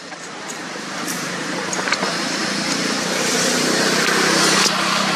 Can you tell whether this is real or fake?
fake